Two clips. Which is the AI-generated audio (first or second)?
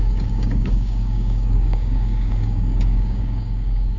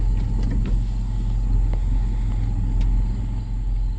first